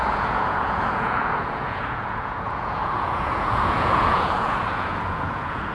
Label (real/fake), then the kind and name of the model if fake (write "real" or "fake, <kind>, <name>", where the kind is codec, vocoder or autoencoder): fake, vocoder, Vocos